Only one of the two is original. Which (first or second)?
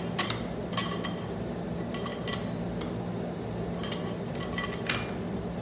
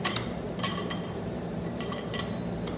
first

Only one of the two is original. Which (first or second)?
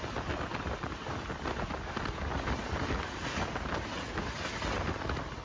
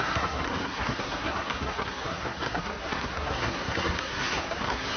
first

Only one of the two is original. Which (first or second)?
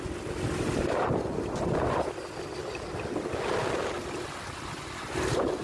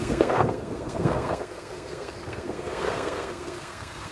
first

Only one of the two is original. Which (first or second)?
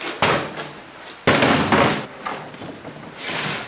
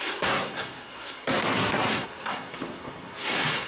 first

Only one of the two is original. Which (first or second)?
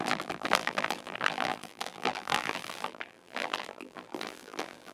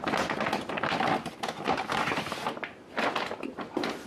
second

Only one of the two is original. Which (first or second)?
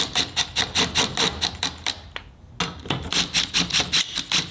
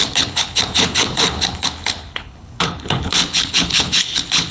first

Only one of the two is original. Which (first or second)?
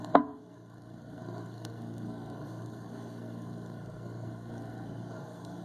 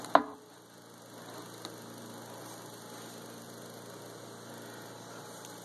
second